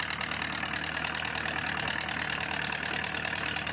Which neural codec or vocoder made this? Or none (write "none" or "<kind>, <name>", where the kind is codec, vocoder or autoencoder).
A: none